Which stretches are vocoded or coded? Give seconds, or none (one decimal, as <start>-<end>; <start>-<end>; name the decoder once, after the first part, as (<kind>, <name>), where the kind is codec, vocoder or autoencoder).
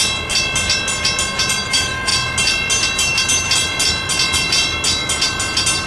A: 1.7-2.1 (autoencoder, DAC-VAE)